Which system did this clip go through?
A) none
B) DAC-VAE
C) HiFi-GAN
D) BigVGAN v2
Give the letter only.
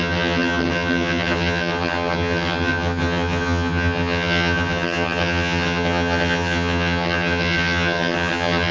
C